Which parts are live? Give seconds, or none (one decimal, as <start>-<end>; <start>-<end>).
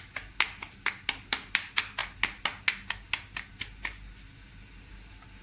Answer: 0.0-5.4